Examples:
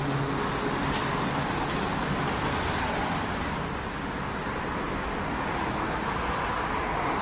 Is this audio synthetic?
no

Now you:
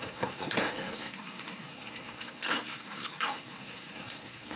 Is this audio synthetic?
yes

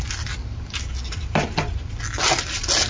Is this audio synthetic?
no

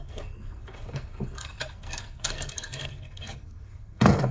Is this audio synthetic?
yes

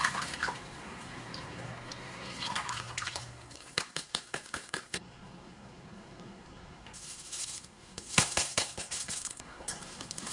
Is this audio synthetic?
yes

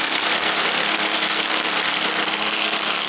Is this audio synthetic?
yes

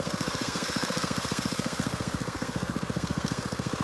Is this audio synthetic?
yes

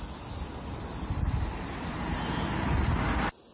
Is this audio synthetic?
no